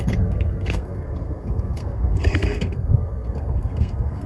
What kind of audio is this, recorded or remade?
remade